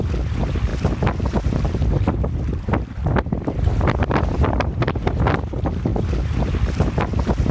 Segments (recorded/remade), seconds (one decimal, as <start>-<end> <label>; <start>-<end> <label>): 0.0-0.7 remade; 0.7-2.7 recorded; 2.7-7.5 remade

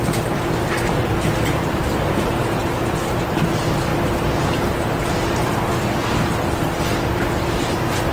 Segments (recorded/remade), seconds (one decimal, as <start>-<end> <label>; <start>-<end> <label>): 0.0-3.9 remade; 3.9-4.4 recorded; 4.4-5.7 remade; 5.7-6.9 recorded; 6.9-8.1 remade

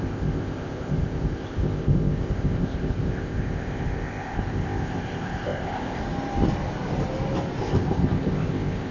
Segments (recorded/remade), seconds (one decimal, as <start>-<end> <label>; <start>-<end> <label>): 0.0-6.0 remade; 6.0-7.6 recorded; 7.6-8.9 remade

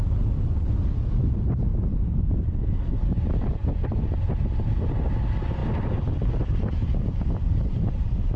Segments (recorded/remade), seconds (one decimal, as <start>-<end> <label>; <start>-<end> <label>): 0.0-8.4 recorded

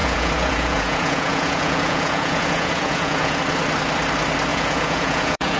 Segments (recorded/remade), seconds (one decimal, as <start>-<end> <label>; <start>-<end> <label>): 0.0-3.4 remade; 3.4-4.5 recorded; 4.5-5.6 remade

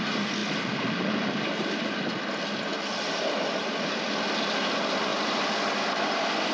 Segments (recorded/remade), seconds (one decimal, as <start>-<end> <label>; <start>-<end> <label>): 0.0-6.5 recorded